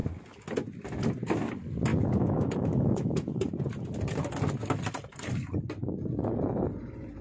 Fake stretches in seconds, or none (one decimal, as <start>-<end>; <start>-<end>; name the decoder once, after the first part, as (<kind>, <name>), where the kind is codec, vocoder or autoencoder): 1.9-3.3 (autoencoder, DAC-VAE)